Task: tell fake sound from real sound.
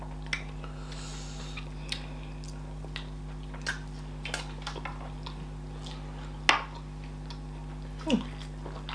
real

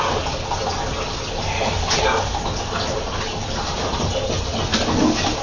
real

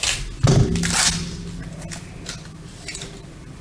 real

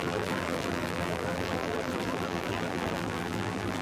fake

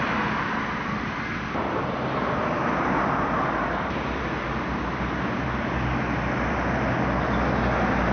real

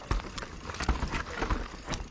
real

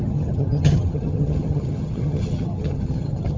fake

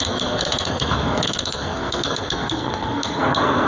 fake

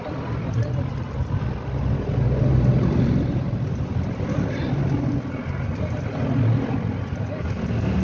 real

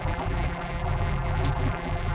fake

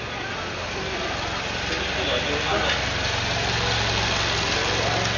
real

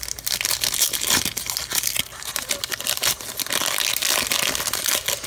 real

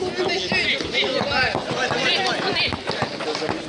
real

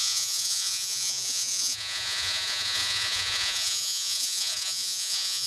fake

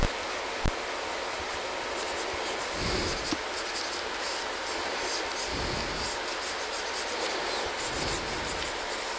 real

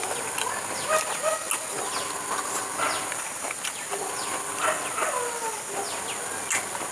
real